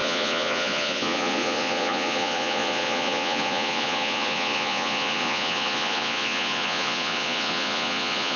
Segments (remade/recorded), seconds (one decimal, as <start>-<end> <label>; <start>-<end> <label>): 0.0-8.4 remade